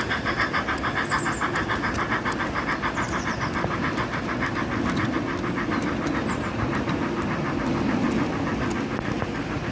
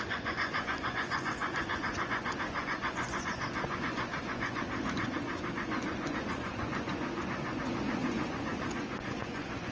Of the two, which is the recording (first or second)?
first